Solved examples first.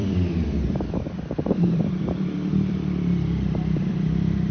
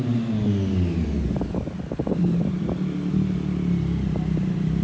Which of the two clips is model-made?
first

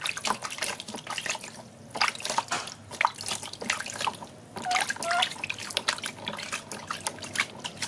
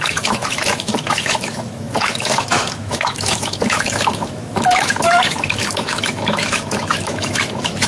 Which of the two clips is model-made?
second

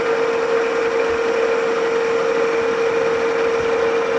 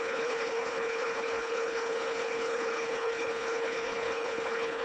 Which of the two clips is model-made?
second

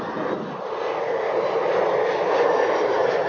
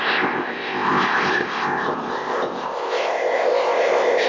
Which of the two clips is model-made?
second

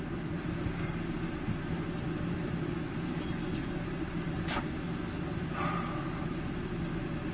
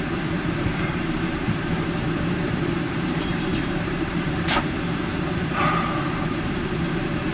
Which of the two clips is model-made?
second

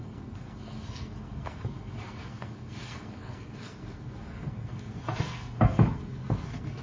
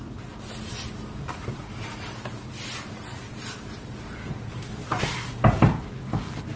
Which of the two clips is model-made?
first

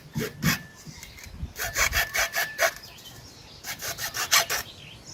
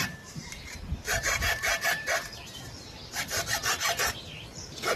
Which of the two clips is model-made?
second